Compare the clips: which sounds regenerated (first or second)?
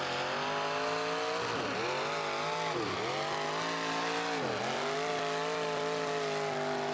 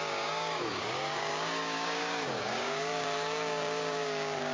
second